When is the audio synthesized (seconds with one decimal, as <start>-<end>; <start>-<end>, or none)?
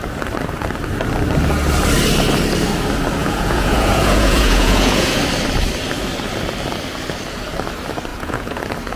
3.2-5.2; 8.1-8.6